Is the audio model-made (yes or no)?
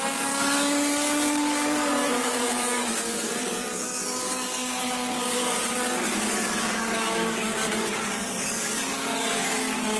yes